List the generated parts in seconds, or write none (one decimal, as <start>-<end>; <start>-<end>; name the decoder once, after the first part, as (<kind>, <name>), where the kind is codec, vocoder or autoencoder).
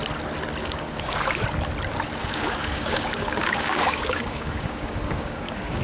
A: 0.6-1.4 (codec, DAC); 2.2-5.8